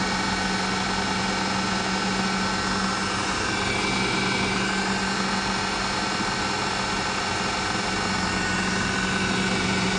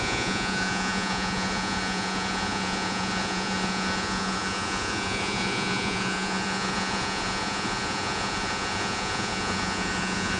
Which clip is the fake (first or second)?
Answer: second